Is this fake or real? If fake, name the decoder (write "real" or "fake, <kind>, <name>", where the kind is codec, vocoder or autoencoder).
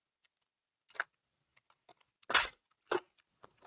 real